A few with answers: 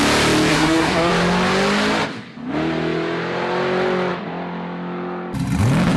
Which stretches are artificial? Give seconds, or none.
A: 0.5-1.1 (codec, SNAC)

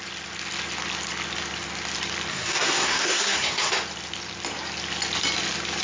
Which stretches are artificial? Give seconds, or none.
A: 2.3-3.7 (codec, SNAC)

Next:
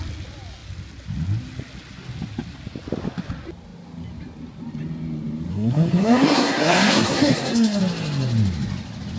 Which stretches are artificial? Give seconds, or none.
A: 5.5-7.8 (codec, SNAC)

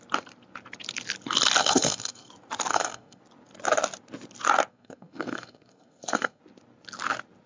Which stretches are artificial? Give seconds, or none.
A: 1.6-2.3 (codec, SNAC); 2.7-3.2; 4.7-6.4

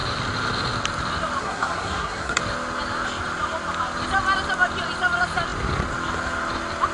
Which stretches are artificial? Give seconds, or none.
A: 1.4-2.4 (codec, SNAC)